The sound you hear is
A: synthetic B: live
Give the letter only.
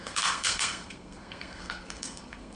A